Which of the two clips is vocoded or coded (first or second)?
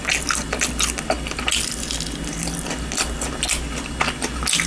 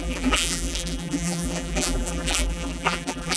second